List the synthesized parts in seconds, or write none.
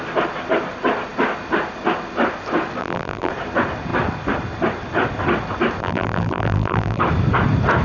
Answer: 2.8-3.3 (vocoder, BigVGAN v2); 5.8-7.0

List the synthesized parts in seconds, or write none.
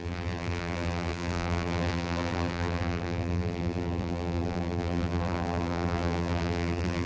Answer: 0.0-7.1 (vocoder, BigVGAN v2)